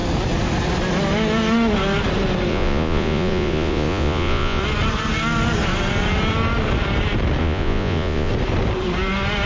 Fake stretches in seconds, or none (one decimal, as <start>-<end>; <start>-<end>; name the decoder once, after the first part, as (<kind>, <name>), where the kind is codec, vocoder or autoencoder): 2.5-4.6 (vocoder, Vocos); 7.4-8.3